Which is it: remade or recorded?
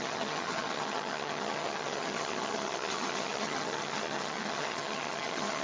remade